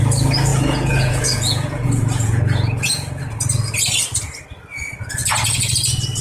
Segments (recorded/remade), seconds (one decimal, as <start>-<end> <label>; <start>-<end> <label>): 0.0-0.5 recorded; 0.5-3.2 remade; 3.2-5.2 recorded; 5.2-5.7 remade; 5.7-6.2 recorded